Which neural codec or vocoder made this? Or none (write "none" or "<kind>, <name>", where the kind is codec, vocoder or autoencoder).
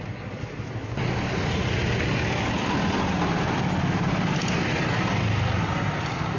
none